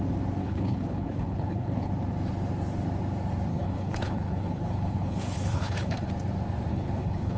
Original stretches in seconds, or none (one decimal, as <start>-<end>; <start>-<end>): 0.0-0.4; 1.9-3.5; 6.1-6.7